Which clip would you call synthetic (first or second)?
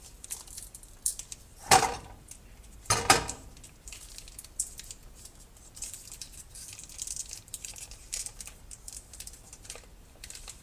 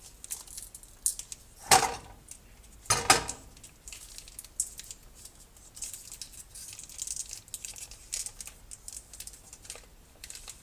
first